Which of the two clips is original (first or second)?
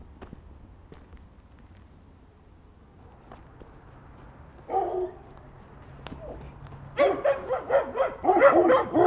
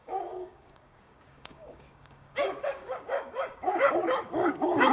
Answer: first